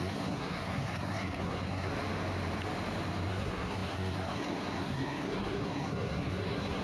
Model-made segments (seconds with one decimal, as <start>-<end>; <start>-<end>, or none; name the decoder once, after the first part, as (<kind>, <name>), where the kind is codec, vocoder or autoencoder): 0.0-1.9 (codec, SNAC); 3.3-6.8